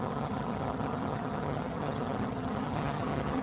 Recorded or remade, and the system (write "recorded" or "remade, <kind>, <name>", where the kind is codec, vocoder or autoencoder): remade, vocoder, HiFi-GAN